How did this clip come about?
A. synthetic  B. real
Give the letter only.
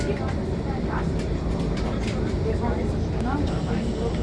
B